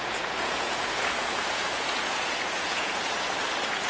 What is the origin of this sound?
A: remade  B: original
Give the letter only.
A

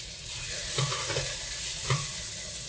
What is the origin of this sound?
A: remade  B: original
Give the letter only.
A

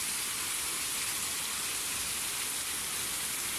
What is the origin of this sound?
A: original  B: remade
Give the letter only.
A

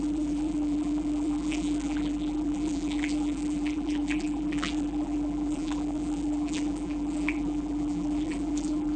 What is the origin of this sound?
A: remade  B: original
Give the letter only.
A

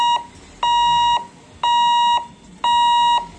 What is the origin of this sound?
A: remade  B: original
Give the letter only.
B